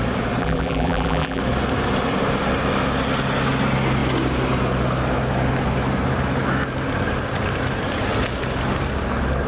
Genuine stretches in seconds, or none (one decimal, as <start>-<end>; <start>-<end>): 0.0-0.4; 1.4-9.5